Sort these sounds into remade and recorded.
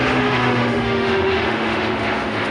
remade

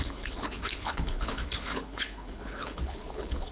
remade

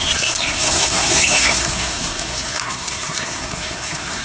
remade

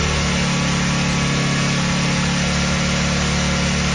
recorded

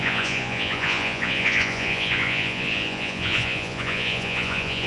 remade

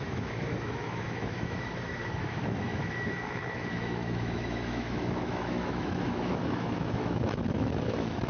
remade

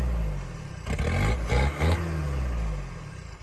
recorded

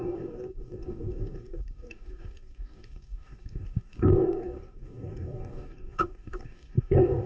remade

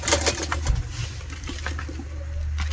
recorded